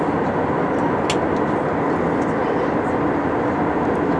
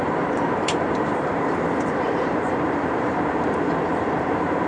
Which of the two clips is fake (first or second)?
second